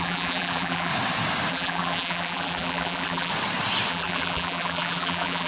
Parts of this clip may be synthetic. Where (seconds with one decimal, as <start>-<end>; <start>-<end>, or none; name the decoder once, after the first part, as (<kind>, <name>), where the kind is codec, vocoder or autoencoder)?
0.0-0.9 (vocoder, BigVGAN v2); 1.5-3.3; 3.9-5.5